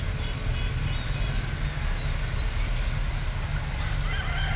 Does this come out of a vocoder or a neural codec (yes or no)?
no